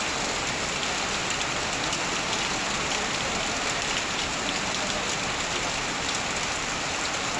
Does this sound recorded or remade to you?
recorded